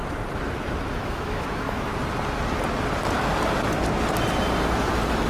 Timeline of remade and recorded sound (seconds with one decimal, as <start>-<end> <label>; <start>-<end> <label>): 0.0-0.9 recorded; 0.9-1.9 remade; 1.9-5.3 recorded